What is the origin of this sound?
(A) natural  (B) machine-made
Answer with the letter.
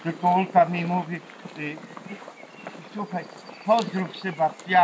A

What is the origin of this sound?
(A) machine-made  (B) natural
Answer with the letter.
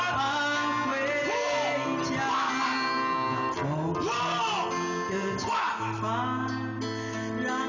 B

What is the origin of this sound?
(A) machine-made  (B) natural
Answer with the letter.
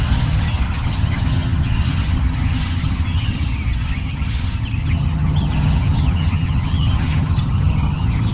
A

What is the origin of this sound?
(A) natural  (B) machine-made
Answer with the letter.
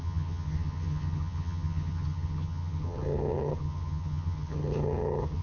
B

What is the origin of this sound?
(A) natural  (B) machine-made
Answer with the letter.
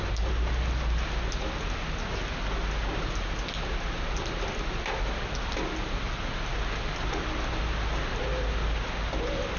A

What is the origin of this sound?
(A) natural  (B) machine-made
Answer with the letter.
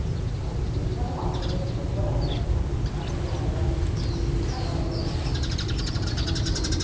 A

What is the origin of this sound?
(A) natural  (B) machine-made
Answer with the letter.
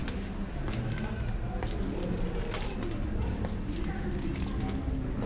A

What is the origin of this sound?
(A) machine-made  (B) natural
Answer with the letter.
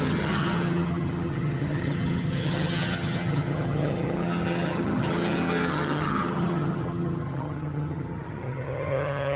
A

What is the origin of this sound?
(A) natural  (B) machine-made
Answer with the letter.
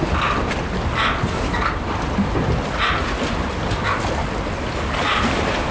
A